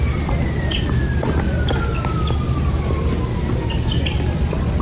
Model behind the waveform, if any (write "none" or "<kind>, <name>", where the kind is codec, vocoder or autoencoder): none